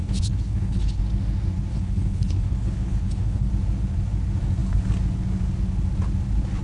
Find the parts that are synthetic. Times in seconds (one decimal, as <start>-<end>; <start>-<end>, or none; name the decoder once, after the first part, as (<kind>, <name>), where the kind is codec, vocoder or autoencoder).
0.0-1.0 (codec, HILCodec); 1.7-3.5